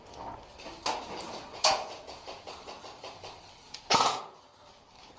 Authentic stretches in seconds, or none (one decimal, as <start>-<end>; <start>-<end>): 0.0-1.5; 2.8-3.6; 4.4-5.2